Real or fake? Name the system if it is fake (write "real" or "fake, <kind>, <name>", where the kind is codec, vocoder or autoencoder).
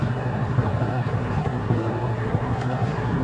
fake, codec, SNAC